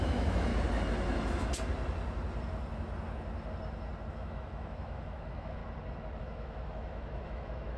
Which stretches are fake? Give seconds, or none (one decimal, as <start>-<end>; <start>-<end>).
0.0-0.5; 4.1-5.6; 6.2-7.8

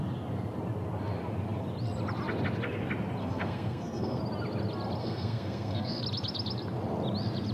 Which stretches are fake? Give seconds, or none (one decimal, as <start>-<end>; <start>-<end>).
3.2-4.2; 5.0-6.0

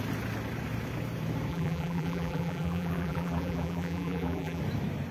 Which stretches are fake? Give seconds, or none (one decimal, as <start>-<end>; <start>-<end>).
1.5-4.6

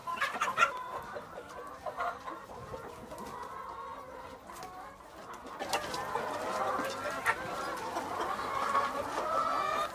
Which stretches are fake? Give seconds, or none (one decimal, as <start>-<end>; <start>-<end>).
0.0-2.2; 8.6-9.3

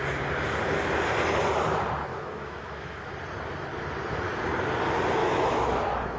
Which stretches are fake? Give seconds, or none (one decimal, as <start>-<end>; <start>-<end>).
2.1-3.1; 5.2-5.8

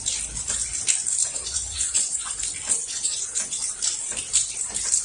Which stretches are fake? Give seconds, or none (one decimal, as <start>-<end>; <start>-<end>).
1.2-2.3; 2.8-3.6